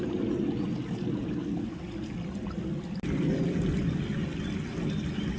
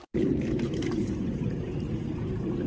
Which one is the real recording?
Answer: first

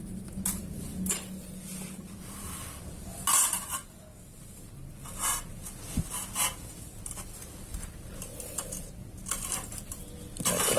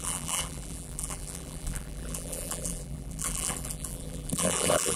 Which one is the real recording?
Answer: first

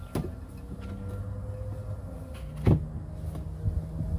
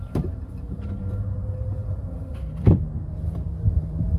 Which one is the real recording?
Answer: first